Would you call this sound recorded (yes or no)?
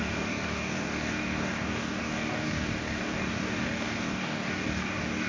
no